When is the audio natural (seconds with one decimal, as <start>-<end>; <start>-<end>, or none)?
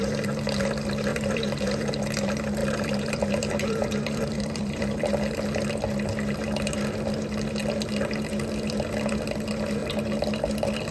0.0-1.1; 1.9-2.6; 5.0-10.9